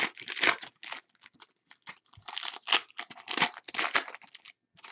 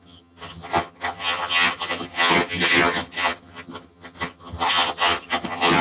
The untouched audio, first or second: first